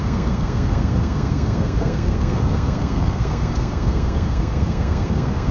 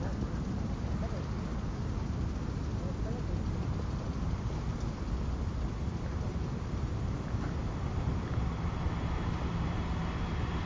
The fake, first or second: first